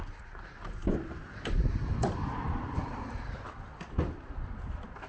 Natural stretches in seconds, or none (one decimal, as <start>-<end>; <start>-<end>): none